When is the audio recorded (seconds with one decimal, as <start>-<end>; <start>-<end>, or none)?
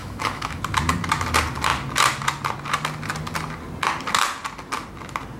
0.6-5.4